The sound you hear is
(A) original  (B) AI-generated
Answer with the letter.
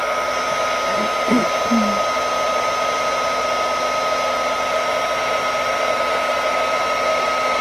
A